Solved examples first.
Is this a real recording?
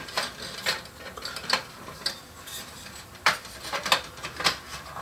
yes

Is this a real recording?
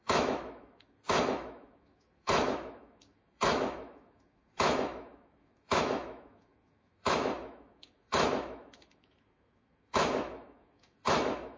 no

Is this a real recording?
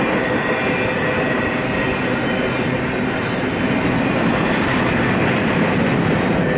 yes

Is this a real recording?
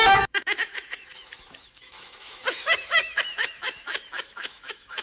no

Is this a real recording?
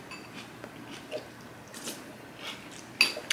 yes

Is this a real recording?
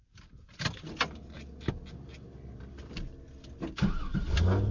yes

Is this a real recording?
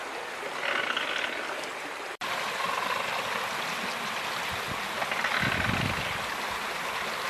yes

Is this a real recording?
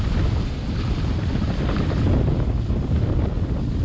yes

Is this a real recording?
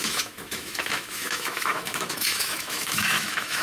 no